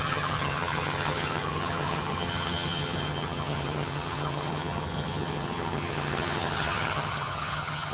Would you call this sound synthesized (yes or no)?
yes